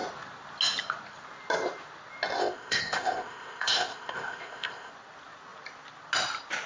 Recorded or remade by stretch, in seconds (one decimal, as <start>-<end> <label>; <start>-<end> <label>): 0.0-2.4 recorded; 2.4-4.9 remade; 4.9-6.7 recorded